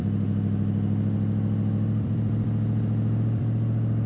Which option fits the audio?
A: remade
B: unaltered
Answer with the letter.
A